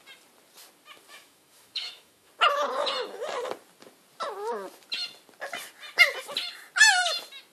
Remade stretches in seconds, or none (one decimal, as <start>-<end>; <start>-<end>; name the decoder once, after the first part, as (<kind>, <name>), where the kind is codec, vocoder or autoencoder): 1.1-2.3 (autoencoder, DAC-VAE)